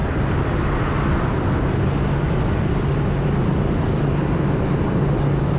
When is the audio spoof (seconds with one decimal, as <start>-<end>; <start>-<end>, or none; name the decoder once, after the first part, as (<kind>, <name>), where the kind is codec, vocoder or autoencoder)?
none